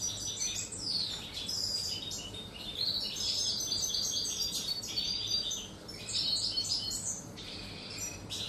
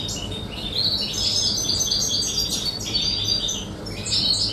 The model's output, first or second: first